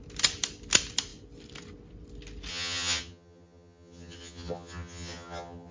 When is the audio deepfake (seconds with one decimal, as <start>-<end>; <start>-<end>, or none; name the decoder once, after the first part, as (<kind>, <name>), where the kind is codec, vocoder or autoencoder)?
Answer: 2.5-5.7 (vocoder, HiFi-GAN)